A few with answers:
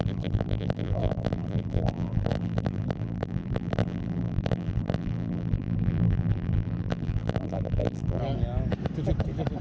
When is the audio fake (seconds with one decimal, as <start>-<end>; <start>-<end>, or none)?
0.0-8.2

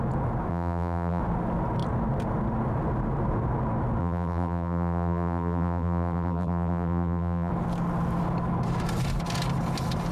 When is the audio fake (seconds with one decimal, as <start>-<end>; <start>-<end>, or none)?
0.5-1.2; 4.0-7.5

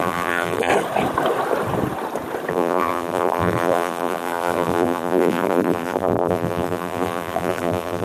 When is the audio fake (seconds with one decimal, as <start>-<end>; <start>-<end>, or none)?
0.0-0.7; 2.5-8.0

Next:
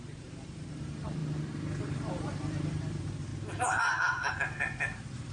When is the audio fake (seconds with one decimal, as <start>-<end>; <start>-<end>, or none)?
0.0-1.2; 1.8-3.3; 4.4-5.3

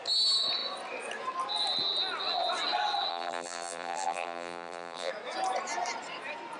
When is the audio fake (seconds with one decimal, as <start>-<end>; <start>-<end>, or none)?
3.1-5.1

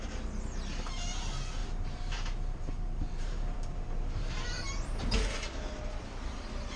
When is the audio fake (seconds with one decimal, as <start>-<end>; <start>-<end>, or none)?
1.6-5.0

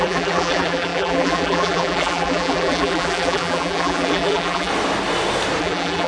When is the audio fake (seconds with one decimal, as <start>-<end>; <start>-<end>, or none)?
0.0-4.7; 5.6-6.1

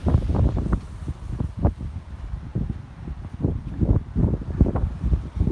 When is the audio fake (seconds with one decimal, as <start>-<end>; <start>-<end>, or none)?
none